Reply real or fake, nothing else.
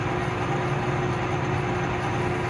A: real